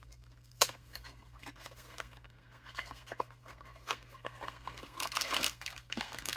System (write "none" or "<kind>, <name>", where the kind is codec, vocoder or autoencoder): codec, SNAC